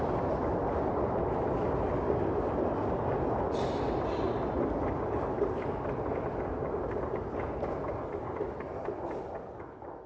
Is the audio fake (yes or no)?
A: no